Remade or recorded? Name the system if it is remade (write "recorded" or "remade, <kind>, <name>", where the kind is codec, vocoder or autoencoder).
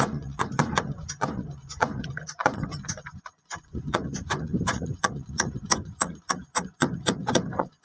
remade, vocoder, Vocos